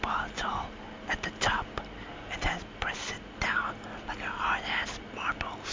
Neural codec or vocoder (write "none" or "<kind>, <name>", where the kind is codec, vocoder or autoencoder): none